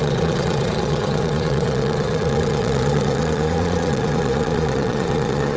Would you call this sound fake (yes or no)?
yes